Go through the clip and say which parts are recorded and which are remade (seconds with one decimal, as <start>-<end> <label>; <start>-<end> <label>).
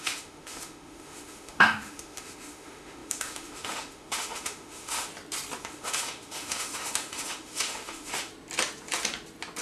0.0-5.1 remade; 5.1-5.6 recorded; 5.6-8.3 remade; 8.3-9.6 recorded